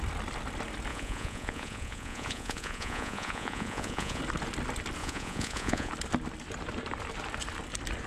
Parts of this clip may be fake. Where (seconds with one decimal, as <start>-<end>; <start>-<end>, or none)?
0.9-4.2; 5.0-5.9